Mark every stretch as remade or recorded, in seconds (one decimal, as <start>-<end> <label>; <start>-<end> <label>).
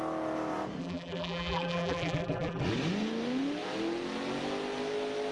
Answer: 0.0-0.8 recorded; 0.8-2.6 remade; 2.6-5.3 recorded